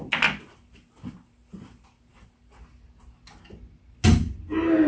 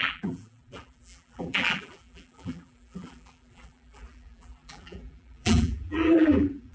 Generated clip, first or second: second